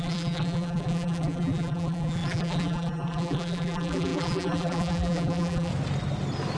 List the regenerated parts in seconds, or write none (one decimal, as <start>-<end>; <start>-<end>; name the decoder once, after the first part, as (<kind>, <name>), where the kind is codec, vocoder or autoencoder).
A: 0.0-5.7 (vocoder, BigVGAN v2)